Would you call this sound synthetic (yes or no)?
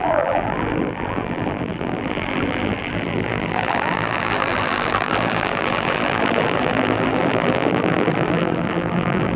yes